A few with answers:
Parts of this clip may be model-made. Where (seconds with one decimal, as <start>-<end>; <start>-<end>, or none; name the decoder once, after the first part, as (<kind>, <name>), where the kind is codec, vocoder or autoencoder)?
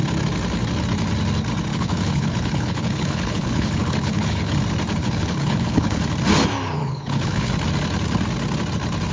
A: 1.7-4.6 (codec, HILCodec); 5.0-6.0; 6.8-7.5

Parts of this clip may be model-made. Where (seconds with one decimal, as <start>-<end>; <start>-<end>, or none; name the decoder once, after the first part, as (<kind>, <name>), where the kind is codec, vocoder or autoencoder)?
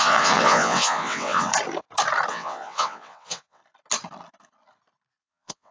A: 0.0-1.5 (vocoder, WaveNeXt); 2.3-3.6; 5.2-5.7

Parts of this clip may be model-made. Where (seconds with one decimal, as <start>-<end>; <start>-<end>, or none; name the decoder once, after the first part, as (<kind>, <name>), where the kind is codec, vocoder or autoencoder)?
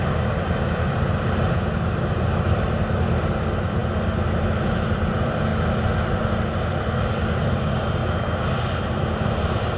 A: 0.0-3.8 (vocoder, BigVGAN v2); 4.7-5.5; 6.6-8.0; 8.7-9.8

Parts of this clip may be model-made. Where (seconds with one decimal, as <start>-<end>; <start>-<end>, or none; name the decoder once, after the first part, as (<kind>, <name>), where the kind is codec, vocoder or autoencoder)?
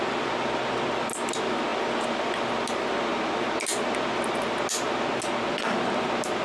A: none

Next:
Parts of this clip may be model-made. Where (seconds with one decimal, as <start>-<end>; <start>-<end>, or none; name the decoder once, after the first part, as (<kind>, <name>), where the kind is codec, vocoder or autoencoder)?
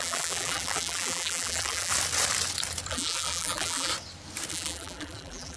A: 0.0-1.9 (vocoder, BigVGAN v2); 2.9-3.9; 4.5-5.6